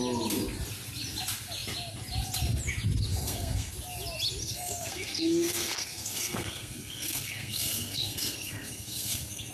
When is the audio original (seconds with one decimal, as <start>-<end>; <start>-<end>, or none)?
0.0-3.1; 3.7-4.4